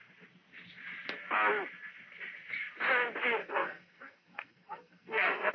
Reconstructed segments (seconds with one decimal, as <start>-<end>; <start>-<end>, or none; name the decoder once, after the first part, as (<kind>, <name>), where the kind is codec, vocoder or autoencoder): 3.4-5.5 (codec, SNAC)